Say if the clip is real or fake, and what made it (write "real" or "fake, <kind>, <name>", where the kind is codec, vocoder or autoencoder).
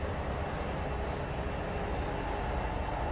real